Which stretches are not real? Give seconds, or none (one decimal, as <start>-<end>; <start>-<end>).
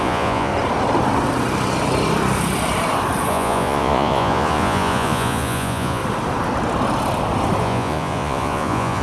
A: 0.0-0.5; 3.3-6.0; 7.6-9.0